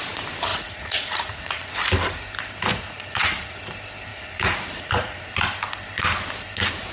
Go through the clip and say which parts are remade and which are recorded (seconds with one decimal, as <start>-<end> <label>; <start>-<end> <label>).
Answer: 0.0-0.5 recorded; 0.5-1.7 remade; 1.7-2.7 recorded; 2.7-3.6 remade; 3.6-4.1 recorded; 4.1-5.3 remade; 5.3-6.9 recorded